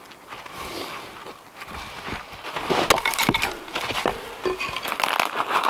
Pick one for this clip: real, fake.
real